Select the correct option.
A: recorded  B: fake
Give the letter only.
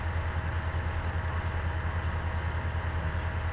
A